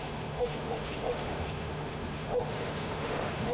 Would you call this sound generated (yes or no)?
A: yes